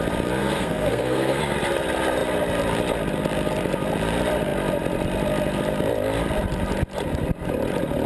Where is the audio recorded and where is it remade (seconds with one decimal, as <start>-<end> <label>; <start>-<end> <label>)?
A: 0.0-0.4 recorded; 0.4-1.4 remade; 1.4-8.1 recorded